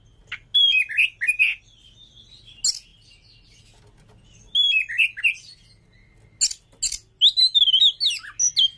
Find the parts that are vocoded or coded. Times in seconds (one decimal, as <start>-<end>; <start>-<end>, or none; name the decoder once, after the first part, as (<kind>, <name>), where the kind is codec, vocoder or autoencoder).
none